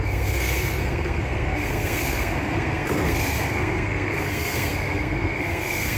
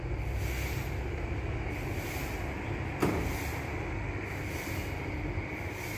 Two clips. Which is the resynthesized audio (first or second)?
first